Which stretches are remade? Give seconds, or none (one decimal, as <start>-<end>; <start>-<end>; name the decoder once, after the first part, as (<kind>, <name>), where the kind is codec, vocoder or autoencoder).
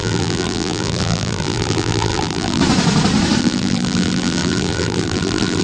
0.0-2.6 (vocoder, BigVGAN v2); 3.4-5.6